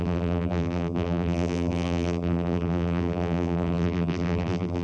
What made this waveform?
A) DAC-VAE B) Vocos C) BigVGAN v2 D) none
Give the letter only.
C